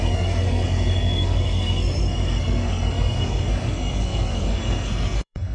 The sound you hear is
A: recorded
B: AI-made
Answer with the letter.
B